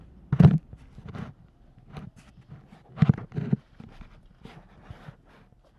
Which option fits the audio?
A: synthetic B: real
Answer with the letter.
B